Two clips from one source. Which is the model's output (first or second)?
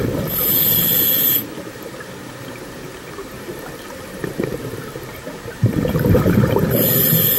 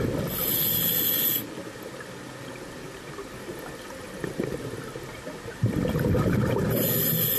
first